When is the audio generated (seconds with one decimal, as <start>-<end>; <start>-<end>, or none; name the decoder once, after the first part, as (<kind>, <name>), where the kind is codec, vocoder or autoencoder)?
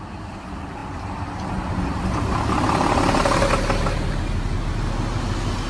none